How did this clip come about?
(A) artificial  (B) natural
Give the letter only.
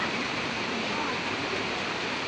A